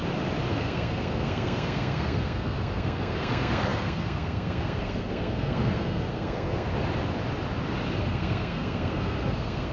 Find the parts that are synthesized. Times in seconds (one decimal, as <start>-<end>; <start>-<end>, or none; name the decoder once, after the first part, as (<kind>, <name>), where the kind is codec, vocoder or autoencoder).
0.5-6.7 (codec, SNAC); 8.0-9.7